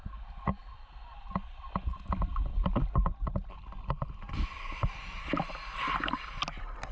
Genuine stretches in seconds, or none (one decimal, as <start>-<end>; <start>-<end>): 0.0-6.9